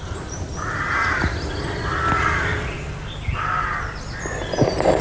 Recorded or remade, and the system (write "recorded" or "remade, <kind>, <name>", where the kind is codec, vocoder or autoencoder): remade, vocoder, BigVGAN v2